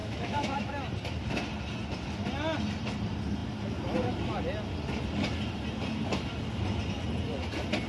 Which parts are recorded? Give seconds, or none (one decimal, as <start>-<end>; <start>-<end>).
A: 0.7-7.9